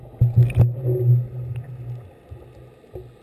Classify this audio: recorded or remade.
recorded